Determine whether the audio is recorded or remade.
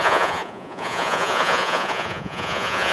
remade